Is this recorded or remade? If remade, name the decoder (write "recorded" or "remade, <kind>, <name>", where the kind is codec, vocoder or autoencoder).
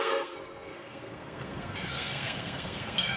remade, codec, SNAC